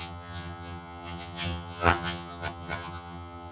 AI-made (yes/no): yes